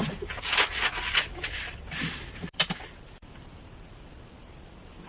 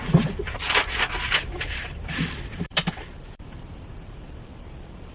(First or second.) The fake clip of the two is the second